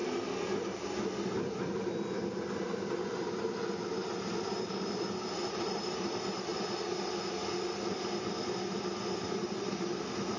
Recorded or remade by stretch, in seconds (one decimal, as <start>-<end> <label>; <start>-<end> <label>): 0.0-4.2 recorded; 4.2-6.5 remade; 6.5-9.6 recorded; 9.6-10.4 remade